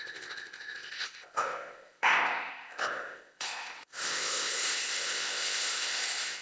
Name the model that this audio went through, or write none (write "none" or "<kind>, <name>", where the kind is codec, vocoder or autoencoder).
codec, ZipCodec